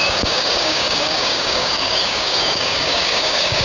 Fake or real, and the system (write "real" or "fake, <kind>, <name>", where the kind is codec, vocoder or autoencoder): fake, codec, DAC